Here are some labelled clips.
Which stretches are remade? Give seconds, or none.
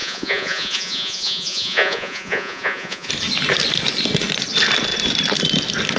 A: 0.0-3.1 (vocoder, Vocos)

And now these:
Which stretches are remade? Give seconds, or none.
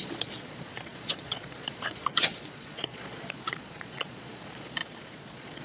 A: 0.0-5.6 (vocoder, Vocos)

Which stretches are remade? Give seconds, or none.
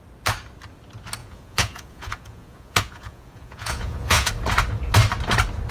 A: 1.2-4.3 (vocoder, Vocos)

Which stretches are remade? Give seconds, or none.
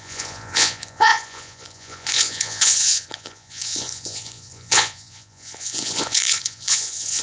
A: 0.0-7.2 (vocoder, Vocos)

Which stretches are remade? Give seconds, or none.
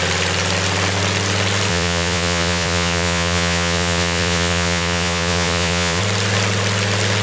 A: 1.7-6.0 (vocoder, Vocos)